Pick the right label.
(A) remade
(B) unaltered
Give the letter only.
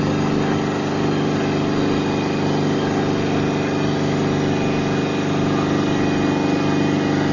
B